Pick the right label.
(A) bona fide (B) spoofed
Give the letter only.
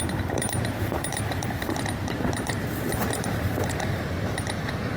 B